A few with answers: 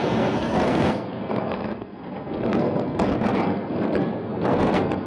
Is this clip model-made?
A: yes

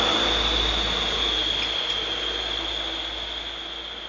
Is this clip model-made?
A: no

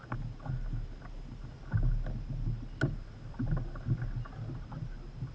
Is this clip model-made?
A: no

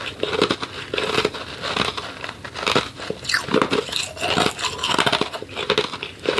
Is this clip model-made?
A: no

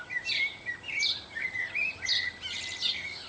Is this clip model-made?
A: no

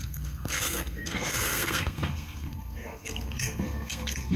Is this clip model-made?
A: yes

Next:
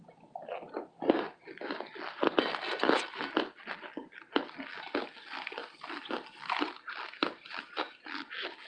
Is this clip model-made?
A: no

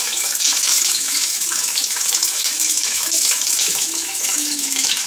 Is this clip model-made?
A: yes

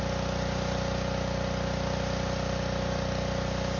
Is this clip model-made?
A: no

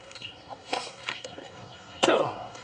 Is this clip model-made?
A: yes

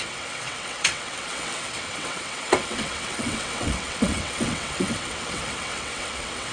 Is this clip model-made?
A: yes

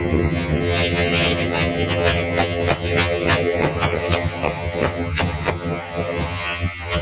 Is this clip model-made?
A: yes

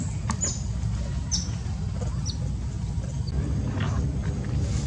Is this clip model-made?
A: no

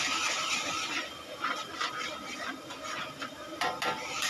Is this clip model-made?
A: no